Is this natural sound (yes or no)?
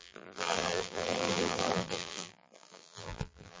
no